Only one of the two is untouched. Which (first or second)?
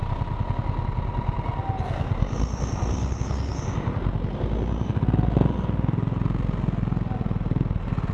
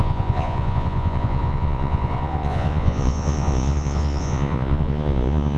first